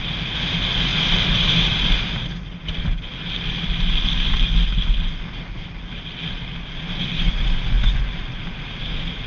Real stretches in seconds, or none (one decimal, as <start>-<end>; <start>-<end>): 0.0-9.3